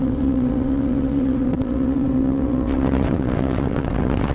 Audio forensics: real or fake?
fake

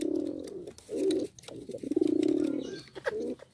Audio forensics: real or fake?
real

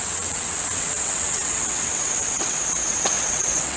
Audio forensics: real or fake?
fake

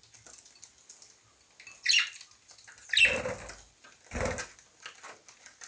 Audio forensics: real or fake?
real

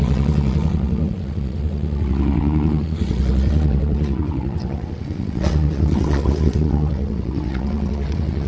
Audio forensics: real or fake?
fake